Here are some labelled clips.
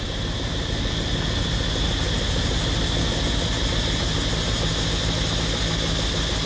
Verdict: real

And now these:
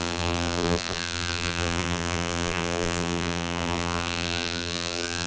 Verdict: fake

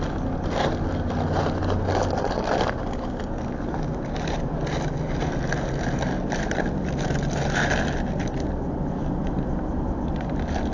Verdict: real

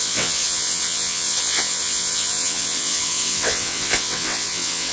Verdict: fake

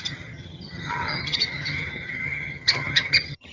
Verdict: fake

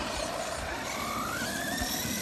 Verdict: real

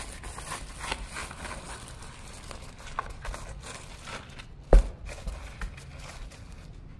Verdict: real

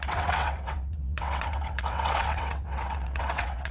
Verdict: fake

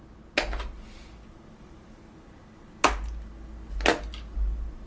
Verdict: real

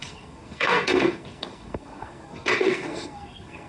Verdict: fake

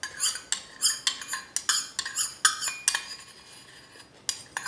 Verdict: real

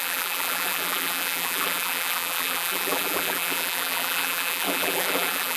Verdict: fake